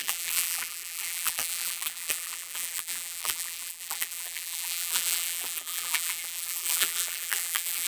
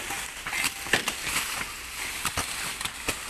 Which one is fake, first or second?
first